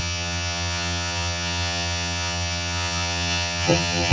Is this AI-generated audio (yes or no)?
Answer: yes